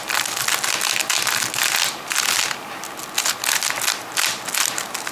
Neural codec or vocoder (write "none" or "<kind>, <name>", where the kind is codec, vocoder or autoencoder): none